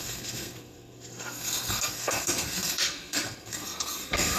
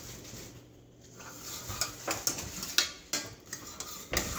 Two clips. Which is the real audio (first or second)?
second